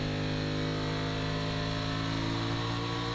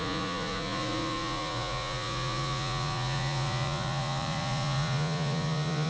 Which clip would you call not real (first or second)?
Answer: second